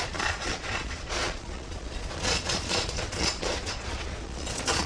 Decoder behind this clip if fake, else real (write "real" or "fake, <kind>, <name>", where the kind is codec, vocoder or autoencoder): fake, vocoder, Vocos